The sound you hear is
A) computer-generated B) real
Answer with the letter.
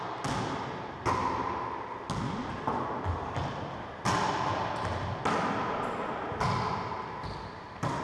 B